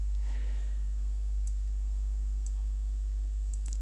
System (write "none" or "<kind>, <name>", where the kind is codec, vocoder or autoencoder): codec, SNAC